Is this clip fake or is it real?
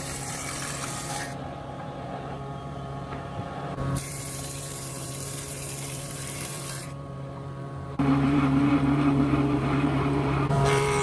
fake